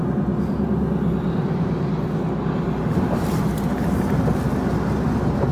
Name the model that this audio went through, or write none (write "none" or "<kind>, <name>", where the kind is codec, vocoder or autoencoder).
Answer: none